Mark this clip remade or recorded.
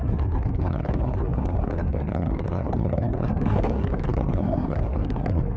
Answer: remade